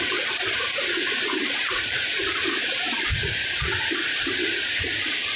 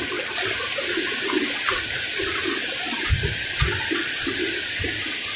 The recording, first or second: second